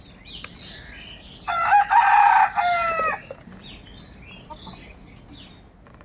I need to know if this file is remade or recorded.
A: recorded